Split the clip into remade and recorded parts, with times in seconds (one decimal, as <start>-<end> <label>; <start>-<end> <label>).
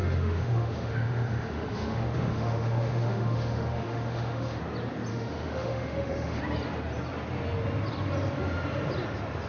0.0-4.6 remade; 4.6-5.1 recorded; 5.1-6.4 remade; 6.4-9.5 recorded